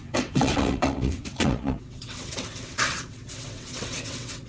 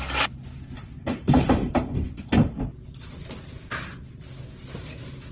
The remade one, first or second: first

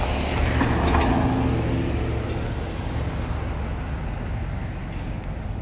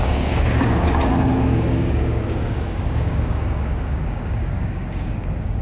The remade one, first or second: second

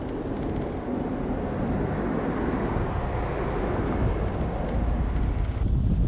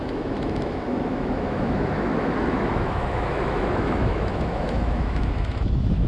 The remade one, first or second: second